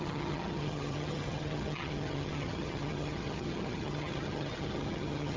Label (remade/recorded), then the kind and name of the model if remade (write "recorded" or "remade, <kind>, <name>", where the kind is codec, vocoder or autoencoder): remade, vocoder, HiFi-GAN